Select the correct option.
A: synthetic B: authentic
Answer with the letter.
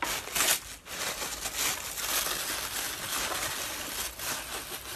B